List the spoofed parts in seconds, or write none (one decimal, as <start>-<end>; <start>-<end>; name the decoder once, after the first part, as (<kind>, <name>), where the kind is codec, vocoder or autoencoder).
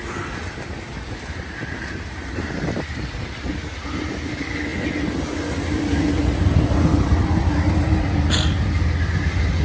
0.9-3.4 (vocoder, BigVGAN v2)